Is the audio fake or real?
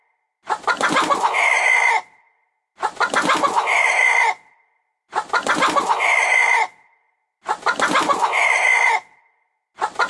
real